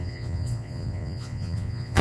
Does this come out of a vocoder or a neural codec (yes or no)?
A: yes